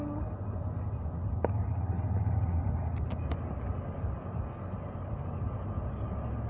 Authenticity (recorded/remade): recorded